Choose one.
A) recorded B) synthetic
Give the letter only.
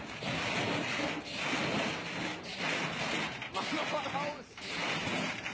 A